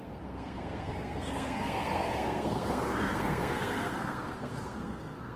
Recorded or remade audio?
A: remade